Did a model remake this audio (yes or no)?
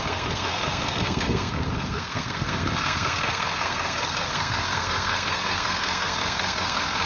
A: yes